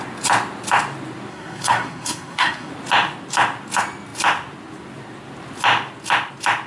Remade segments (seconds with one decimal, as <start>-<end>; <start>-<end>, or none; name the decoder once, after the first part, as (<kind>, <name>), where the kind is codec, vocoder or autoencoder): 1.3-2.7 (codec, SNAC)